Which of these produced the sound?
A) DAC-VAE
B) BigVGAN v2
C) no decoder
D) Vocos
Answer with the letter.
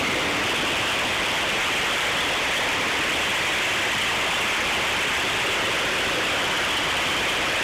C